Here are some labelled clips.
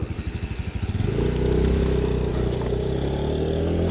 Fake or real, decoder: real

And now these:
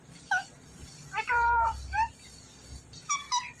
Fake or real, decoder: fake, vocoder, BigVGAN v2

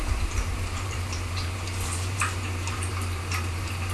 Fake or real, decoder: fake, vocoder, BigVGAN v2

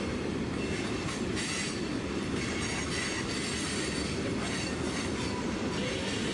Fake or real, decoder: real